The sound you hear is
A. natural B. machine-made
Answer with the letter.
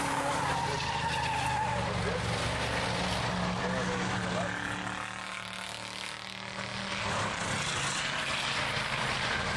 A